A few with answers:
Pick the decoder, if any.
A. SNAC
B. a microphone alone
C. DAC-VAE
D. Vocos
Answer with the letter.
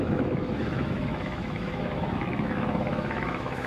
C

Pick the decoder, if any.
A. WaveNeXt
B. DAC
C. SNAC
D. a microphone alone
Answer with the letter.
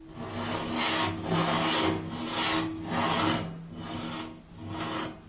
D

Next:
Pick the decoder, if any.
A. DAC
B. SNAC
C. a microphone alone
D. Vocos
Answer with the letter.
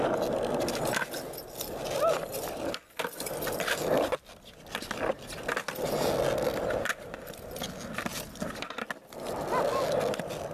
C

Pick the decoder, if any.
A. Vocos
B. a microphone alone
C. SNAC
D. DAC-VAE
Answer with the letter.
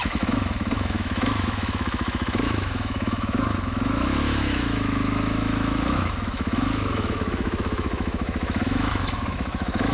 D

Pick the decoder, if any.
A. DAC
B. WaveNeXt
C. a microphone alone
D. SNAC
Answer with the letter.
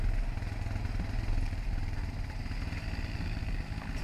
C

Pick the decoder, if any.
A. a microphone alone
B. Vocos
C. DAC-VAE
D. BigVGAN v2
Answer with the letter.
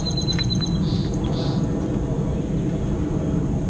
A